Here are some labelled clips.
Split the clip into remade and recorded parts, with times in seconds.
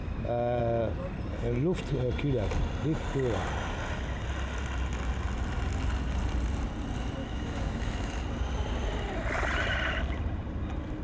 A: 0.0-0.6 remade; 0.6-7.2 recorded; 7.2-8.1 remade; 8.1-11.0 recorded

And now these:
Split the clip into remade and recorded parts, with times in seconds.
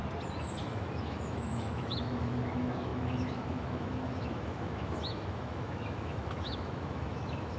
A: 0.0-0.6 recorded; 0.6-7.6 remade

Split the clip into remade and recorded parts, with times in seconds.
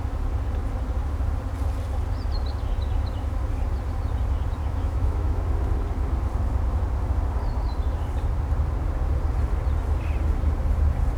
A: 0.0-4.6 recorded; 4.6-5.4 remade; 5.4-11.2 recorded